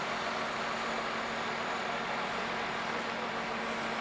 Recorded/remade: recorded